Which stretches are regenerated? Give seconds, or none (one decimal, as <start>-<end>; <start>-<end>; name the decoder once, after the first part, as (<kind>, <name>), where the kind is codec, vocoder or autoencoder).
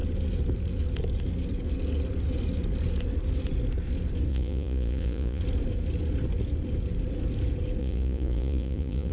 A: 4.3-5.4 (vocoder, Vocos); 7.8-9.1